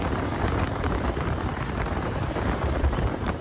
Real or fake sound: fake